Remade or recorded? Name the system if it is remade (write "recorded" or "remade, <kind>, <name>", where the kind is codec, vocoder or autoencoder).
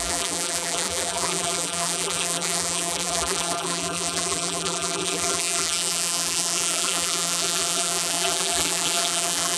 remade, vocoder, BigVGAN v2